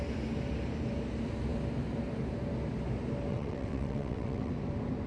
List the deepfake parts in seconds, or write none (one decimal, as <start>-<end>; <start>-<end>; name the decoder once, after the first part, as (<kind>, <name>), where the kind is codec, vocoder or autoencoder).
3.3-4.5 (vocoder, WaveNeXt)